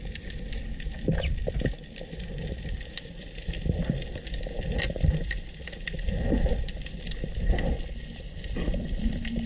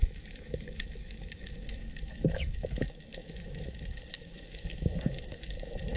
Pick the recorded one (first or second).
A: first